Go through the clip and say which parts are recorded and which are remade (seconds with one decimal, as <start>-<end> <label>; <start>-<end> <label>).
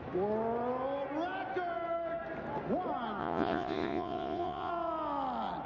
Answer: 0.0-3.2 recorded; 3.2-4.7 remade; 4.7-5.7 recorded